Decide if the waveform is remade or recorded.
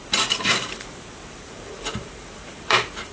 remade